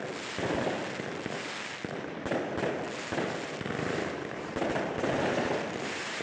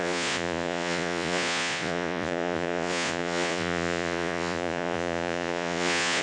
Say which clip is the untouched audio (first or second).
first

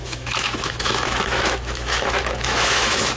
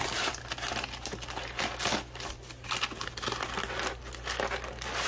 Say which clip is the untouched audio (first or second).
second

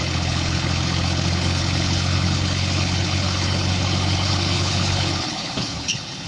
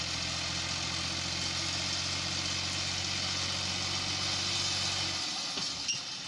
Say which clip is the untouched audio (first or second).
second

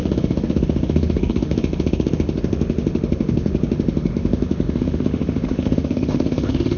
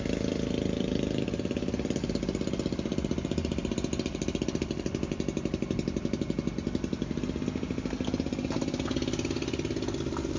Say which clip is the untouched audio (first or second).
second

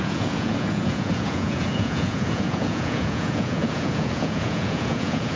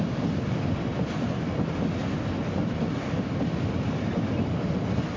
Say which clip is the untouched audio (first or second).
second